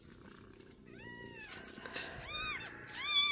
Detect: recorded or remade recorded